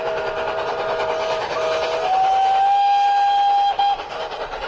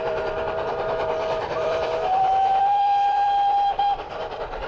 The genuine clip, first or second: first